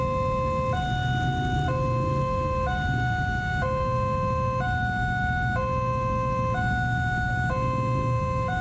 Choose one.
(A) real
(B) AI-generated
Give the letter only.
A